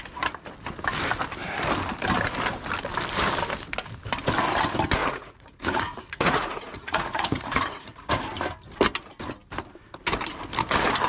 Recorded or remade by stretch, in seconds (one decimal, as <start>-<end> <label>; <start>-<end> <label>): 0.0-5.0 recorded; 5.0-8.1 remade; 8.1-11.1 recorded